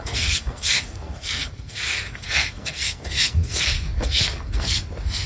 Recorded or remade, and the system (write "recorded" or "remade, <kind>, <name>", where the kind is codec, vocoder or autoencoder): remade, codec, SNAC